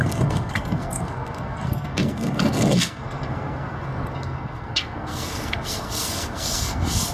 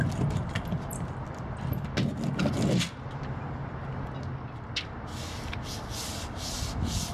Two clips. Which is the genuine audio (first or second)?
second